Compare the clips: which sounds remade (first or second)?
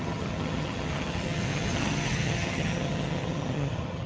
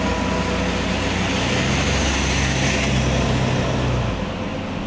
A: first